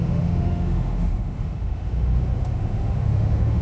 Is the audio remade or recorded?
remade